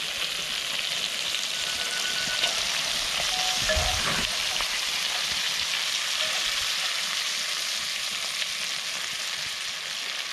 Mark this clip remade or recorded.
recorded